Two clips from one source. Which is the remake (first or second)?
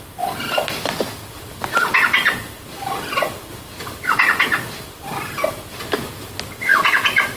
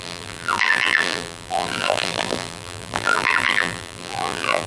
second